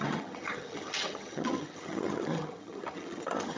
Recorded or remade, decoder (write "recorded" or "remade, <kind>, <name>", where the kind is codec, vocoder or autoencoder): remade, vocoder, HiFi-GAN